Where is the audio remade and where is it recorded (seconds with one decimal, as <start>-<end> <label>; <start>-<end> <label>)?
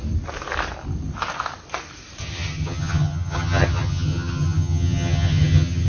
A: 0.0-2.2 recorded; 2.2-5.9 remade